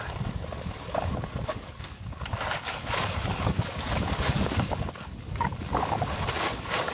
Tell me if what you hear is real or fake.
fake